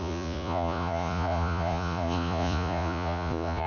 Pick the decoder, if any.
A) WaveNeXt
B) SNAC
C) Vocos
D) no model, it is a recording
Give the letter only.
C